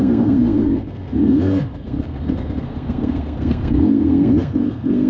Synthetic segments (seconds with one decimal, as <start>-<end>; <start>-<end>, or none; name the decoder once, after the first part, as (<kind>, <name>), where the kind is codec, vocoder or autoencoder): 0.0-5.1 (codec, SNAC)